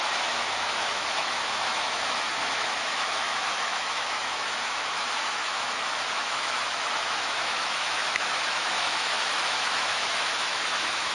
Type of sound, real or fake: fake